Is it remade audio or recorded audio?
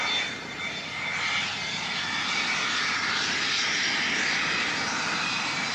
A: recorded